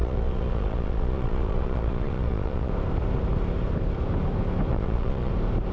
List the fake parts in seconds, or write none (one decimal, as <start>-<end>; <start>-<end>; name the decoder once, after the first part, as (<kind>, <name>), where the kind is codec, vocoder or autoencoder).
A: 0.0-2.7 (vocoder, Vocos); 4.7-5.3